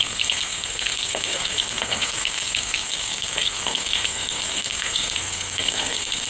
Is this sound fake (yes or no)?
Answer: yes